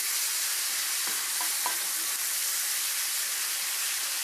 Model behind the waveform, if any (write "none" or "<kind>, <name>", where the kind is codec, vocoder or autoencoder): vocoder, BigVGAN v2